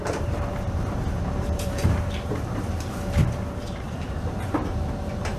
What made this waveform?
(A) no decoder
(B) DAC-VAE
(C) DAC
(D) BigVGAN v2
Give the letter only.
D